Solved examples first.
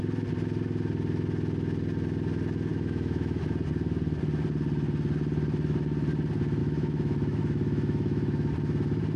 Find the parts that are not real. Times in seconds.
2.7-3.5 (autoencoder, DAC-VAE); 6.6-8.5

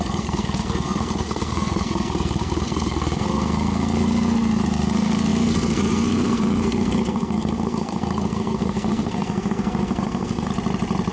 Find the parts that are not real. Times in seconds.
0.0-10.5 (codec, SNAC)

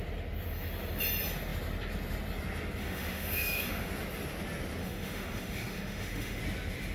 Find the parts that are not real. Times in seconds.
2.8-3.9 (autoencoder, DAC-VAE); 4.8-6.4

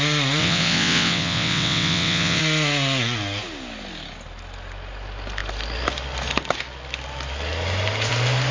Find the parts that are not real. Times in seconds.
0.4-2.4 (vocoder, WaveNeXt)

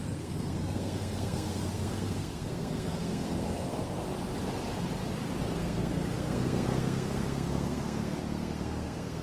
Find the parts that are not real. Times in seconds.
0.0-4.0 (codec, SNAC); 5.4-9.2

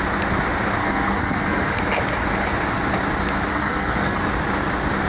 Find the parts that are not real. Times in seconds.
0.8-1.8 (codec, SNAC); 3.5-4.2